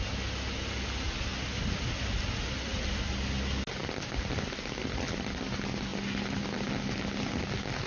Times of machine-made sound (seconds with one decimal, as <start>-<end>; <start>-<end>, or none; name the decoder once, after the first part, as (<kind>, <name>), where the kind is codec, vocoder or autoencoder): none